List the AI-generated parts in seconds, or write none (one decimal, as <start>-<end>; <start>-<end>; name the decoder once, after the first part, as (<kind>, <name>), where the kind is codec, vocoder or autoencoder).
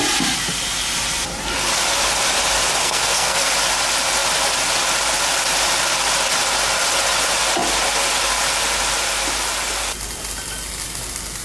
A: 2.8-3.5 (codec, SNAC)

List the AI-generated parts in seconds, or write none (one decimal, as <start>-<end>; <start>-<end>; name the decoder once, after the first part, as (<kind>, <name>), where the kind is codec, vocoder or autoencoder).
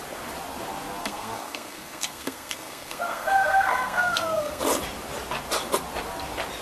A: 1.0-4.6 (codec, SNAC)